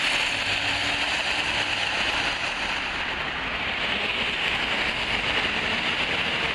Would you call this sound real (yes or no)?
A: yes